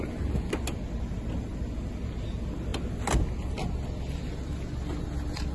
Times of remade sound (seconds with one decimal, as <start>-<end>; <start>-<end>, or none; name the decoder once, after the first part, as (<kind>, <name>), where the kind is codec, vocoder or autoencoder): none